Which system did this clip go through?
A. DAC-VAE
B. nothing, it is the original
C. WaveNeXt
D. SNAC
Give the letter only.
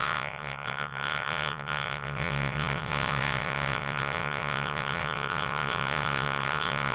C